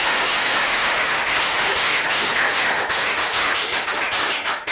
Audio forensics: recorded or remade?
remade